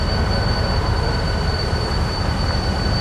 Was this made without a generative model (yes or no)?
no